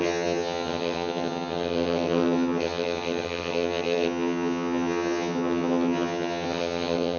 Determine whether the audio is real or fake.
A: fake